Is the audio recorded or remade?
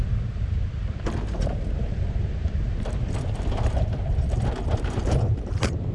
remade